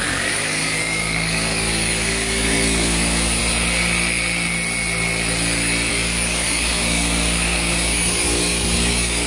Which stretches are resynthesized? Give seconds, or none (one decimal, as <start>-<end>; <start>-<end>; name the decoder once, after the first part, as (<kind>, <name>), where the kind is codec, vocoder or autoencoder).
0.0-3.4 (codec, DAC); 5.9-9.3